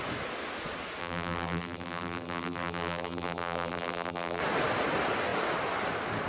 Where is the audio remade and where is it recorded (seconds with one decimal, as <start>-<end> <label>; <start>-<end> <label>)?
0.0-1.0 recorded; 1.0-4.4 remade; 4.4-6.3 recorded